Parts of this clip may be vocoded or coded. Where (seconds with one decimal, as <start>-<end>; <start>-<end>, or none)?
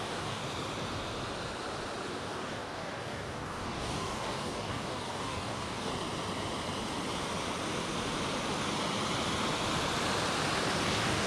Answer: 0.0-0.4; 2.1-5.9; 10.8-11.3